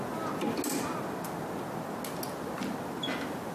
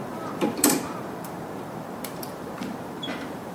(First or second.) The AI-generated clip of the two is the second